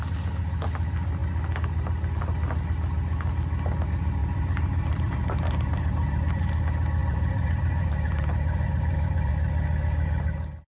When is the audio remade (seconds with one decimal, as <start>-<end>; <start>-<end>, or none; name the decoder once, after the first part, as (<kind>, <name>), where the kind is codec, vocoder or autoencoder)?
4.2-6.6 (vocoder, BigVGAN v2); 7.0-9.3